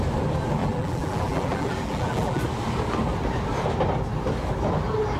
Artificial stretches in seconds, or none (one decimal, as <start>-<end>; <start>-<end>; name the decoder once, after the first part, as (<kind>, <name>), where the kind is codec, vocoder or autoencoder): 0.6-2.4 (vocoder, BigVGAN v2)